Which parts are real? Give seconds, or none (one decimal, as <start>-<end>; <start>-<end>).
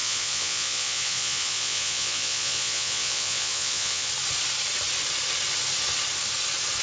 4.1-6.8